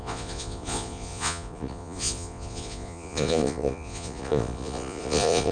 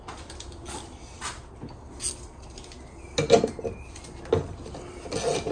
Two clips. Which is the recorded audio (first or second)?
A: second